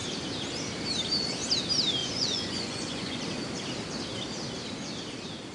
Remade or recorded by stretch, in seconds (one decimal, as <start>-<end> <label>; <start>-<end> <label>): 0.0-2.0 recorded; 2.0-3.2 remade; 3.2-5.5 recorded